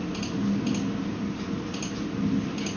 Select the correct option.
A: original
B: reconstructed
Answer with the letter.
A